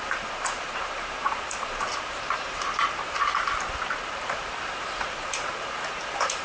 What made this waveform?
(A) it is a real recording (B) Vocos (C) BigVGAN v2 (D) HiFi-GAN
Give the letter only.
C